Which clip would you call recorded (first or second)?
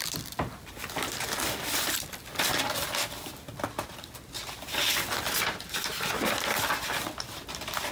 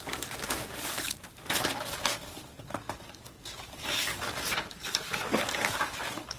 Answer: first